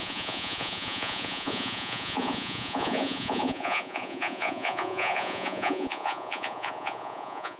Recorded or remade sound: remade